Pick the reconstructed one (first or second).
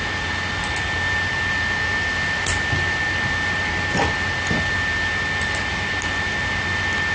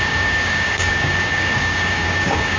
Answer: second